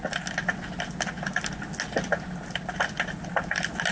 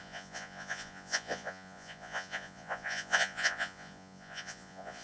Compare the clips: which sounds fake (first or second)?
second